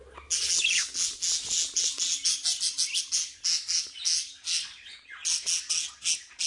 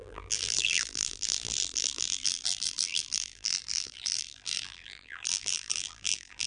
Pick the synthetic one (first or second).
second